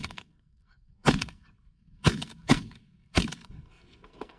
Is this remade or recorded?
remade